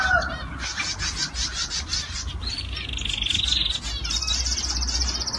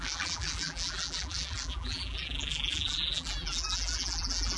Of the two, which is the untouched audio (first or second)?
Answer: first